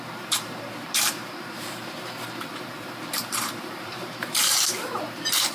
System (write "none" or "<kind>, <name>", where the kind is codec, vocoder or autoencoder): vocoder, BigVGAN v2